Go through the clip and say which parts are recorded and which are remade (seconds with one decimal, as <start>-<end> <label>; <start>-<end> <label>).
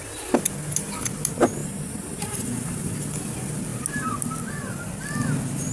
0.0-1.6 recorded; 1.6-2.9 remade; 2.9-5.7 recorded